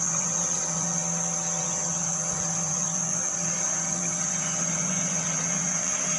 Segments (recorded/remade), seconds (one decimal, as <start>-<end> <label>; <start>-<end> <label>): 0.0-1.0 remade; 1.0-1.6 recorded; 1.6-6.2 remade